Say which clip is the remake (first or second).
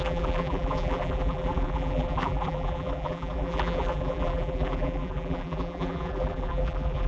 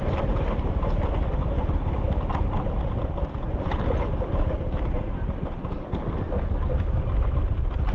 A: first